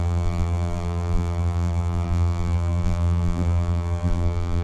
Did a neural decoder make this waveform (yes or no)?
yes